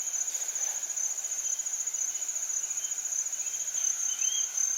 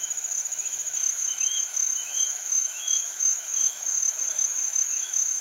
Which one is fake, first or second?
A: second